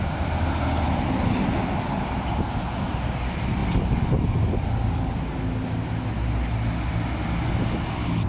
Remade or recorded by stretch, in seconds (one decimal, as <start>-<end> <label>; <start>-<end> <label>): 0.0-8.3 recorded